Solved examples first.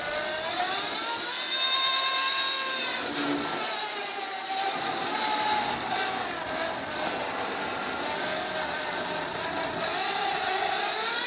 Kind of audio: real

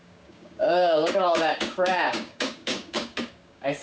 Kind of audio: fake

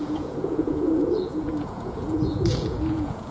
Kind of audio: fake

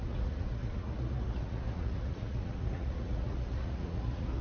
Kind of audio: fake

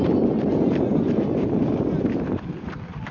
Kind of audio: real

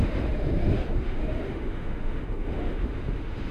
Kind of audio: fake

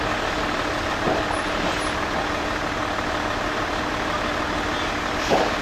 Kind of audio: real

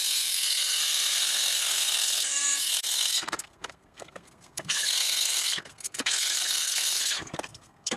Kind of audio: fake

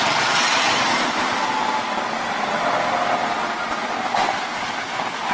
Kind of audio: real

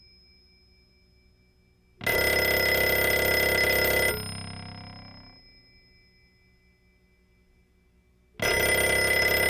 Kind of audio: real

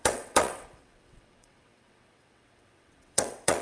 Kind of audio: fake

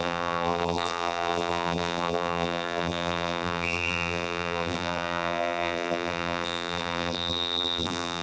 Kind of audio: fake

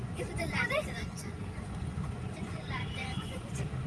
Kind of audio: fake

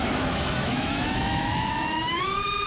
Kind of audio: fake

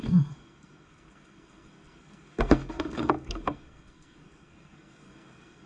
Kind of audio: fake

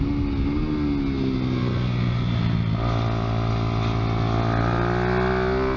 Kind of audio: real